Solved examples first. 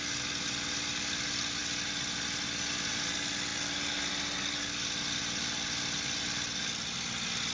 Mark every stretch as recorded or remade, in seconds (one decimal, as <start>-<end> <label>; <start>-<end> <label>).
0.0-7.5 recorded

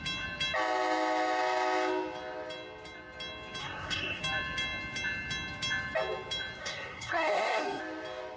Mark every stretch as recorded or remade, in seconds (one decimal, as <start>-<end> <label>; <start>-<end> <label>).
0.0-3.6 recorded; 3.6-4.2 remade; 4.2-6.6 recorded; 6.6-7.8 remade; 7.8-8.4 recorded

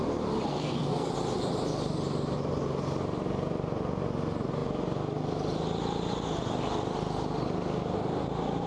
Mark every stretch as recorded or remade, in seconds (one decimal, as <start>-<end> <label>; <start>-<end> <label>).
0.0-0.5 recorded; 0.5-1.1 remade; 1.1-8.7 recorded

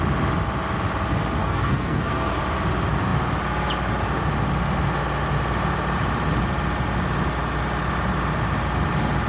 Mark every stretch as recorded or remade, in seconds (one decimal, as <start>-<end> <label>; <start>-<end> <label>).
0.0-1.4 recorded; 1.4-2.4 remade; 2.4-9.3 recorded